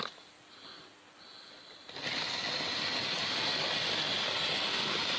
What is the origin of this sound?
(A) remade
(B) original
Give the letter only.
A